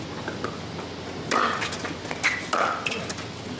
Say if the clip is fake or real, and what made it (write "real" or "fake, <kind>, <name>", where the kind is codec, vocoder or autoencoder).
real